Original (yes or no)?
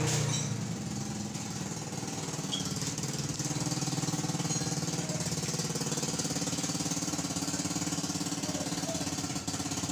yes